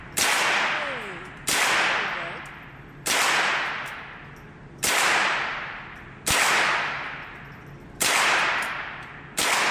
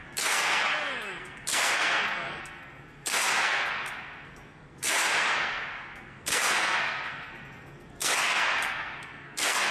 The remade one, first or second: second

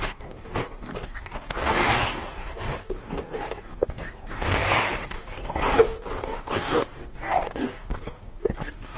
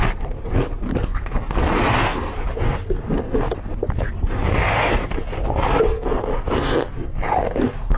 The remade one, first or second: first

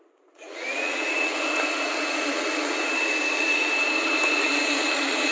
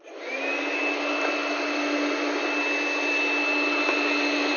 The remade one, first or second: first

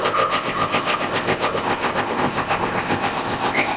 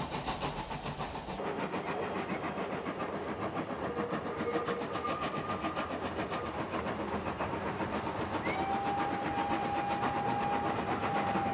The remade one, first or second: first